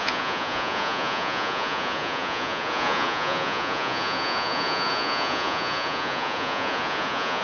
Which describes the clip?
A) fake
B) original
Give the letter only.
A